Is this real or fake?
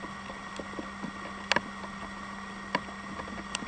real